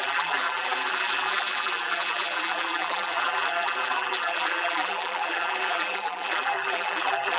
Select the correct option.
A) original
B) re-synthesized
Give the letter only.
B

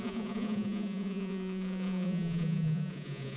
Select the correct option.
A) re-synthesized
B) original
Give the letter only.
A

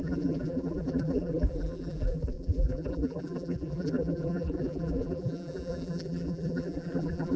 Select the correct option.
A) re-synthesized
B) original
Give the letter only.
A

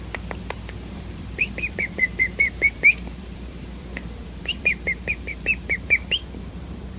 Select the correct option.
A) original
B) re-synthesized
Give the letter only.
B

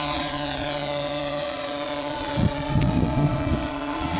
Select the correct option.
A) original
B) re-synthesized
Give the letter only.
B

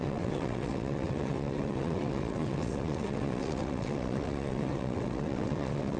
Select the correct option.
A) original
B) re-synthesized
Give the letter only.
B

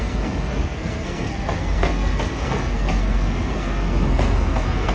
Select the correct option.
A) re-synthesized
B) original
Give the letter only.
A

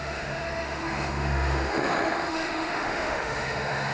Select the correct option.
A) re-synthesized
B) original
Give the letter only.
A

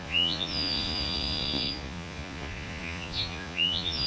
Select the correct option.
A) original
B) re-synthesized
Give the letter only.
B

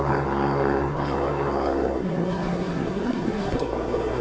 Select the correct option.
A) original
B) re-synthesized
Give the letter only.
B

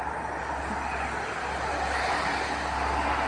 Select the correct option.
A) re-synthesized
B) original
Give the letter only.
B